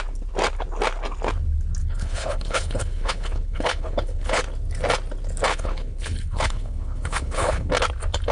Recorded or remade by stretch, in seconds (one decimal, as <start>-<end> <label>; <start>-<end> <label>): 0.0-1.8 recorded; 1.8-4.4 remade; 4.4-5.5 recorded; 5.5-7.7 remade; 7.7-8.3 recorded